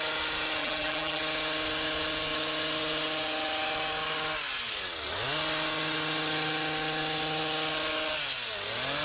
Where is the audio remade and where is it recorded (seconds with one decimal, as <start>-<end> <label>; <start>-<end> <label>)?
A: 0.0-0.6 recorded; 0.6-1.2 remade; 1.2-9.0 recorded

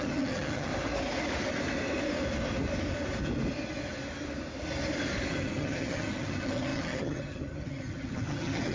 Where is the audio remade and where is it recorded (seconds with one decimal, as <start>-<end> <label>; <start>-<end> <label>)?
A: 0.0-0.7 remade; 0.7-5.3 recorded; 5.3-8.7 remade

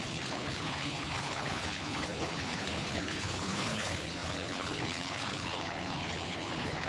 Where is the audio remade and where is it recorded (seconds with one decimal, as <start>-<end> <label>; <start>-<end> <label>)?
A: 0.0-6.9 remade

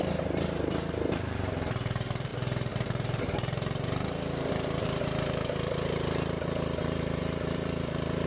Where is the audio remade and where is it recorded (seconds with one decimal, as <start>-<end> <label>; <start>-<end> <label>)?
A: 0.0-8.3 remade